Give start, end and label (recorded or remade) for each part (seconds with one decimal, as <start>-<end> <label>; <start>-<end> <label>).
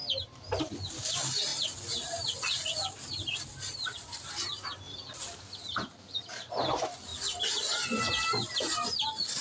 0.0-9.4 recorded